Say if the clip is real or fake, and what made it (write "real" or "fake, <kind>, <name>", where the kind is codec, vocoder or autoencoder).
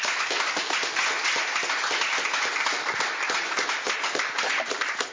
real